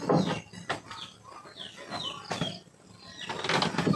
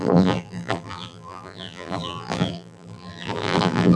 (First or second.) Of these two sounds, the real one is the first